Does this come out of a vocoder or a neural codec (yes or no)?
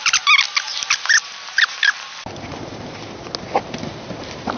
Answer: no